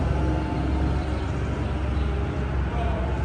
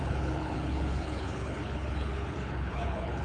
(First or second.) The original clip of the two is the first